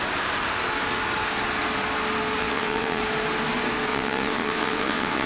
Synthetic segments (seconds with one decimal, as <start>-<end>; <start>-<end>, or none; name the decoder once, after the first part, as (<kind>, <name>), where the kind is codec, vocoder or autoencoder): 2.4-3.0 (vocoder, WaveNeXt); 3.9-5.3